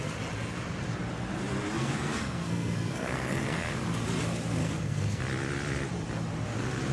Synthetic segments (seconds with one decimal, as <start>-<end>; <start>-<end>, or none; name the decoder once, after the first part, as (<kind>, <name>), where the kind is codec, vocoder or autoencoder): 1.8-3.7 (codec, SNAC); 4.6-5.2

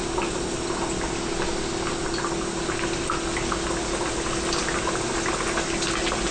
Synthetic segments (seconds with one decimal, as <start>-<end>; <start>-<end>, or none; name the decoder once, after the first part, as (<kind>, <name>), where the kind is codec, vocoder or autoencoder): none

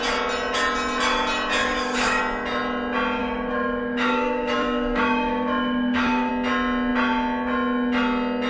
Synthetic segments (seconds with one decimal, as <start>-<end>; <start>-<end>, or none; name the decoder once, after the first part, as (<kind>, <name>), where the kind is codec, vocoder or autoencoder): 1.6-2.2 (codec, DAC); 3.2-6.3

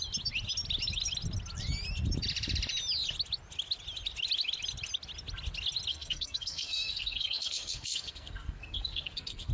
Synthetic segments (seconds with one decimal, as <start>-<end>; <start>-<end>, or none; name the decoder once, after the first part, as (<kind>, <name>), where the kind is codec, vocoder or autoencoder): 5.9-9.5 (codec, SNAC)

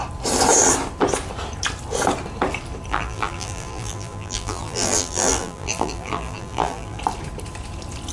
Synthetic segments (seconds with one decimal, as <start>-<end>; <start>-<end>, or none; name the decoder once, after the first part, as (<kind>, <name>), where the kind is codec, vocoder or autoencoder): 2.9-7.0 (vocoder, BigVGAN v2)